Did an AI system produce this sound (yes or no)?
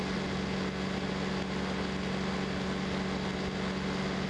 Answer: no